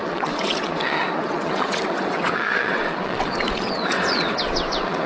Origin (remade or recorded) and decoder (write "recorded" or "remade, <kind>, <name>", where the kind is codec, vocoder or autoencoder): remade, vocoder, WaveNeXt